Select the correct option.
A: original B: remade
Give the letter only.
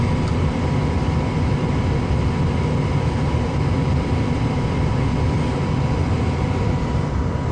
A